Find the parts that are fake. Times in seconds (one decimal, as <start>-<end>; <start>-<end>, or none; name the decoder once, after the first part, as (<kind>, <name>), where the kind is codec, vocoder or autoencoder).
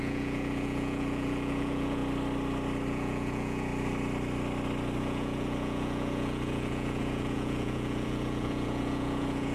0.0-2.0 (vocoder, Vocos); 2.9-3.7; 5.0-9.5